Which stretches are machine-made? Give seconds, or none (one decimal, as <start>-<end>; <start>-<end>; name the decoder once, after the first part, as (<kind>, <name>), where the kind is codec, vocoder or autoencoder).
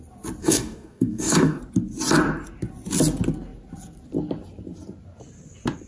0.4-1.6 (codec, DAC)